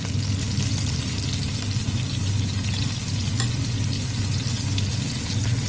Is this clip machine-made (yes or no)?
no